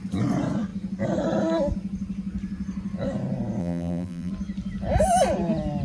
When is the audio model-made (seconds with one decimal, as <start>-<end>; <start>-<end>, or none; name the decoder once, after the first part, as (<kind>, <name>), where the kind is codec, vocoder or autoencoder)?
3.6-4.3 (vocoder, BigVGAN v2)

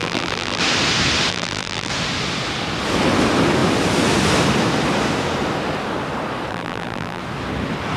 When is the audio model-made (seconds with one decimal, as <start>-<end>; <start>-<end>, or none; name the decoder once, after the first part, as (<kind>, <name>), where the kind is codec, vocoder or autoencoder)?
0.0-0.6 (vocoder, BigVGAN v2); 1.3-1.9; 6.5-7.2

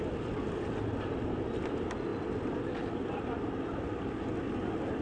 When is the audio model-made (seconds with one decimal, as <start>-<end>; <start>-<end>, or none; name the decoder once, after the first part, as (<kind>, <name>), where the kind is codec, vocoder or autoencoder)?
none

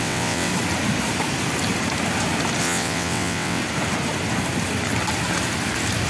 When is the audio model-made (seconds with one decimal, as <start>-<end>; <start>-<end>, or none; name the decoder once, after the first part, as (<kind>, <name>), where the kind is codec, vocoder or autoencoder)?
0.0-0.5 (vocoder, WaveNeXt); 2.6-3.6

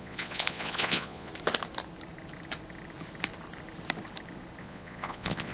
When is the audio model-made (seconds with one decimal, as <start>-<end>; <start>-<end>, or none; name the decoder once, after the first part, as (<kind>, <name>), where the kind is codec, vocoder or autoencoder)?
0.0-1.3 (vocoder, Vocos); 4.6-5.5

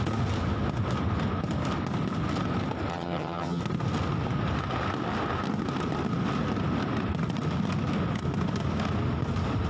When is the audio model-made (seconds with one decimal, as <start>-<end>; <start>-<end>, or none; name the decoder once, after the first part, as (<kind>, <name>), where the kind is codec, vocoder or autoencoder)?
2.9-3.6 (vocoder, HiFi-GAN)